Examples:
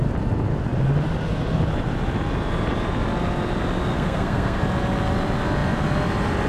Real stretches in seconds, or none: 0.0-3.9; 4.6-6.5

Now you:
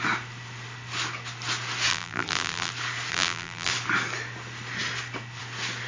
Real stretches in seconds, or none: 0.0-1.9; 2.7-3.1; 3.7-5.9